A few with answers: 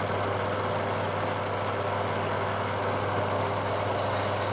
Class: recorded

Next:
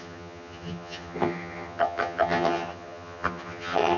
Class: remade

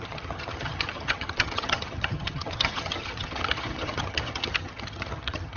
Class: remade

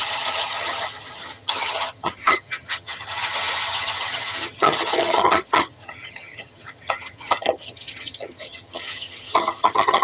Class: remade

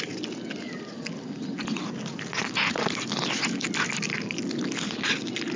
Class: recorded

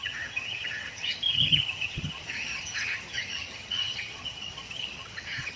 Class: remade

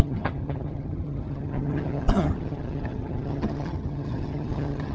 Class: remade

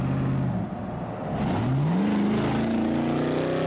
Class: recorded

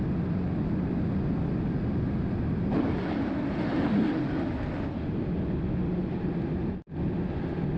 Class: recorded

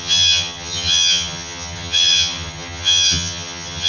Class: remade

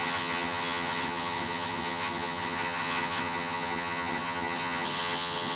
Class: remade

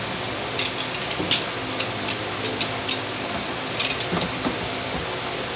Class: recorded